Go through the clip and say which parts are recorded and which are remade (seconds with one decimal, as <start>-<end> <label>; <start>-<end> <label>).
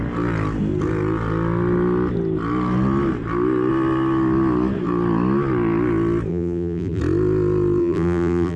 0.0-6.3 recorded; 6.3-7.0 remade; 7.0-7.8 recorded; 7.8-8.6 remade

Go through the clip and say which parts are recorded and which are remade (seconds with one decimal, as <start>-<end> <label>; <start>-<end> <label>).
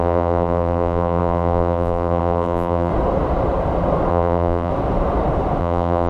0.0-2.9 remade; 2.9-4.1 recorded; 4.1-4.7 remade; 4.7-5.6 recorded; 5.6-6.1 remade